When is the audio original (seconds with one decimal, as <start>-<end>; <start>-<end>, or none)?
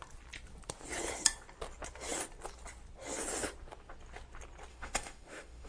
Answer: 0.0-4.7